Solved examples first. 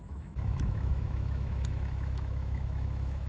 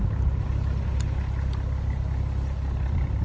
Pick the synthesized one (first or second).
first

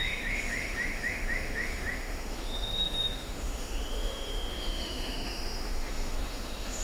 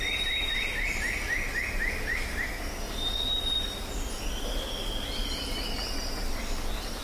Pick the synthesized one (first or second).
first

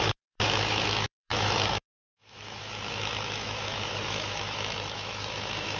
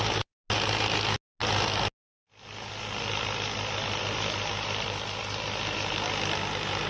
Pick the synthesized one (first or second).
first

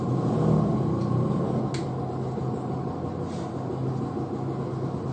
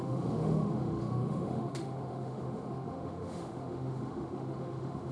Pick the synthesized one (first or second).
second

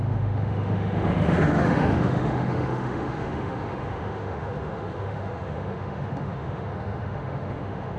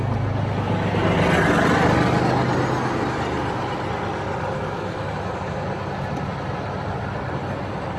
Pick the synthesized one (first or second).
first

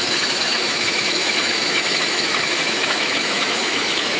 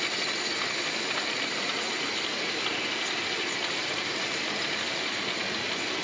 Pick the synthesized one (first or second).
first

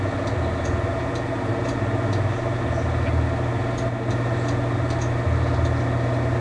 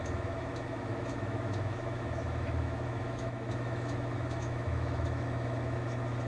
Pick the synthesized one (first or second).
second